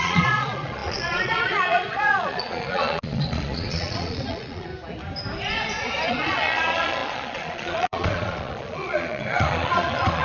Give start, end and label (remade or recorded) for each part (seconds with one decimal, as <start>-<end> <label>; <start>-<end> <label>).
0.0-4.7 remade; 4.7-6.1 recorded; 6.1-10.2 remade